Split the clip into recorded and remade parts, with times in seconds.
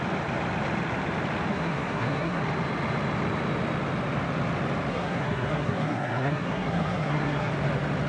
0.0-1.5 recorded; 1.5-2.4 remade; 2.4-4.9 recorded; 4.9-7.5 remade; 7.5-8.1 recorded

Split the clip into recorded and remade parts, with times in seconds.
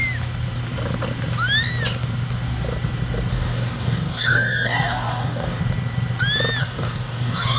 0.0-3.3 recorded; 3.3-5.6 remade; 5.6-6.6 recorded; 6.6-7.6 remade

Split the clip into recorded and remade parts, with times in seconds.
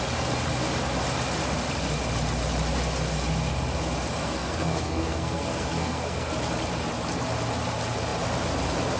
0.0-4.2 recorded; 4.2-6.3 remade; 6.3-9.0 recorded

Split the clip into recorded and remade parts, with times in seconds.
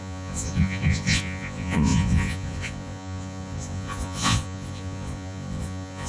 0.0-6.1 remade